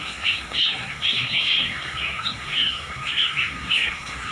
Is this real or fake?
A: fake